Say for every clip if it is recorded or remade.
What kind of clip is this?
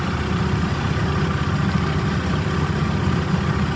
recorded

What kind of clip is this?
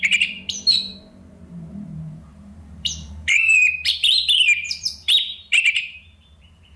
remade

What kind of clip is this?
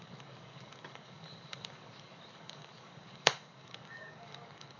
remade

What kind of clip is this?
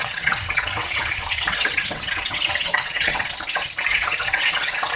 remade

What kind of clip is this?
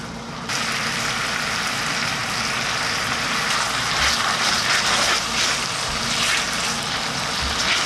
recorded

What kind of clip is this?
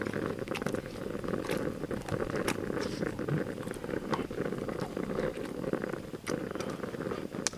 recorded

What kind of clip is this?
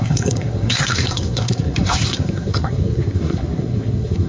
remade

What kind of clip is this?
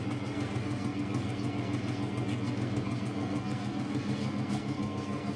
remade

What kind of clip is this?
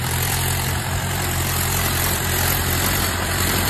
remade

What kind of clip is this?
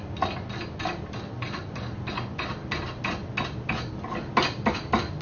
recorded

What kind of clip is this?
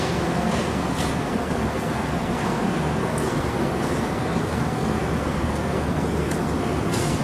remade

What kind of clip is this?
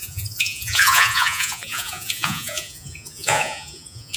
remade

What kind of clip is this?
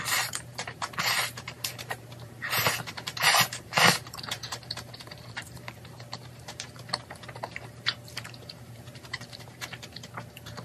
remade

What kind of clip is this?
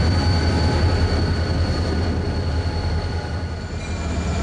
recorded